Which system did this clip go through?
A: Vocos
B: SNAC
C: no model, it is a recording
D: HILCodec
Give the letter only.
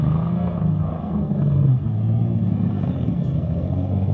B